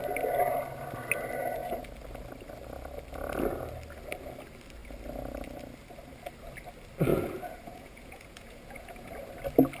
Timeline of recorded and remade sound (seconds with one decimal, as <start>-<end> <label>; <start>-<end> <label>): 0.0-7.1 recorded; 7.1-9.1 remade; 9.1-9.8 recorded